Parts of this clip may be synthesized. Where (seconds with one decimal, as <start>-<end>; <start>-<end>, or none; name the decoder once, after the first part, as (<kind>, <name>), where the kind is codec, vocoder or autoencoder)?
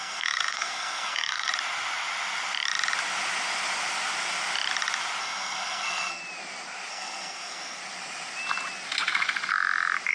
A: 0.0-1.5 (codec, SNAC); 5.2-6.2; 6.9-7.8